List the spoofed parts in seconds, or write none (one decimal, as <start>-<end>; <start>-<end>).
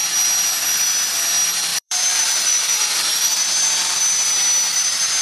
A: 1.7-3.3